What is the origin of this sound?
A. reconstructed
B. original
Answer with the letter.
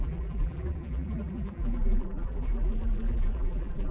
A